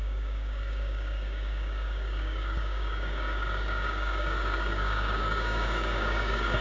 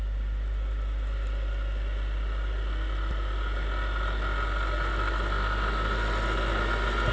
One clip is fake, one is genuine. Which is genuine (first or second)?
second